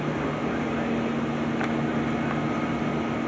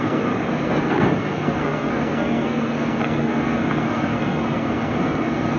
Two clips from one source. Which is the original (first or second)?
first